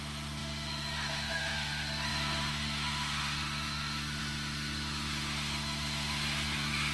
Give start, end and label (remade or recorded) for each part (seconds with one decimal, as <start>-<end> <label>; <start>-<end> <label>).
0.0-6.9 remade